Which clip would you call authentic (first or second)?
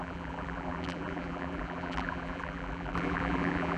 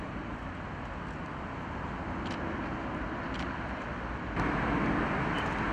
second